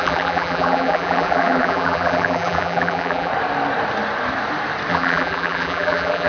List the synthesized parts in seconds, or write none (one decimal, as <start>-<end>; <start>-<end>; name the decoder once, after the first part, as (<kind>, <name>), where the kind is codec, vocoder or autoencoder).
0.0-3.3 (vocoder, BigVGAN v2); 4.9-6.3